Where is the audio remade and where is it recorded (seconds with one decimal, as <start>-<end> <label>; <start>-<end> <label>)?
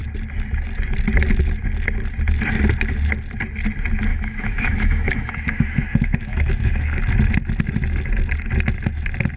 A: 0.0-4.1 recorded; 4.1-7.0 remade; 7.0-9.4 recorded